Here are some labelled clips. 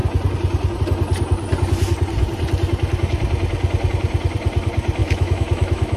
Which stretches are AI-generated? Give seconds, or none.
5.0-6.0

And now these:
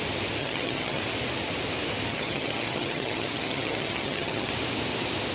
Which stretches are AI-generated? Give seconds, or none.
0.4-1.0; 2.1-4.5

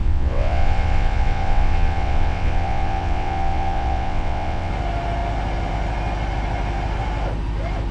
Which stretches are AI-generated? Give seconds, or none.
0.0-4.7

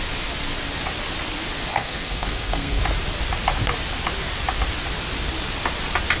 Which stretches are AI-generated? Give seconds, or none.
1.7-2.8

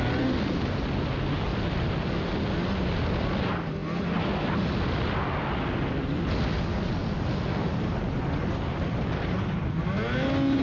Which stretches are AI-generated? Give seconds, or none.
none

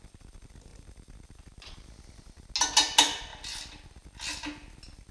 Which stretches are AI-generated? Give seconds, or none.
none

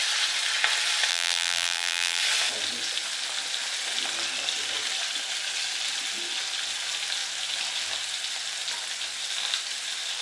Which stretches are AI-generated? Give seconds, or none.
1.1-2.2